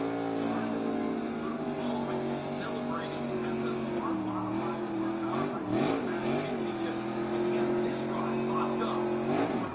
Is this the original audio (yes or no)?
yes